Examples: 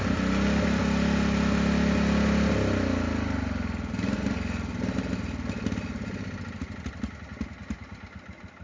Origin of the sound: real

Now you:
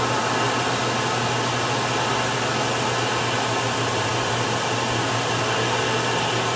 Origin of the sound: real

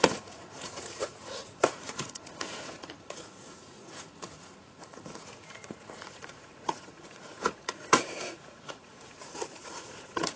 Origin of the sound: fake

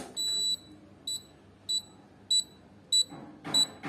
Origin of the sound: real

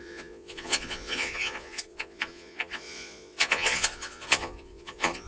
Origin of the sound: fake